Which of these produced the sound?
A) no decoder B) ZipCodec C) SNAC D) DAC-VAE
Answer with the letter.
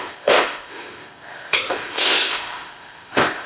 B